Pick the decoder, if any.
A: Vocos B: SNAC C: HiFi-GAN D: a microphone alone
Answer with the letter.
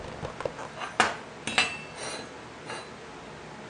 D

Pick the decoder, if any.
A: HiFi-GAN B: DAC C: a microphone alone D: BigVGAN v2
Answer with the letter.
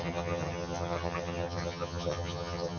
A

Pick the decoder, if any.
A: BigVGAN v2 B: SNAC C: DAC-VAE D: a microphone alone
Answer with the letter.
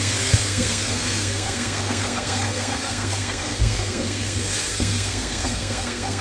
B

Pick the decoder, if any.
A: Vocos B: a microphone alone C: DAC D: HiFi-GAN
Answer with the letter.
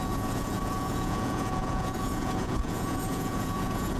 A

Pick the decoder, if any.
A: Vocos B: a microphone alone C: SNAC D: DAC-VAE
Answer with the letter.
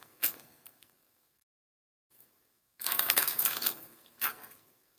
C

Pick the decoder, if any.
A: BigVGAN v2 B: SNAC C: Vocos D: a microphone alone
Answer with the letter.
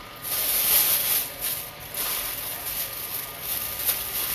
D